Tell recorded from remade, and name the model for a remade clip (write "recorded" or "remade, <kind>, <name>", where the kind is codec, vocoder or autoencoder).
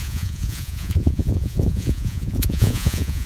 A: remade, vocoder, Vocos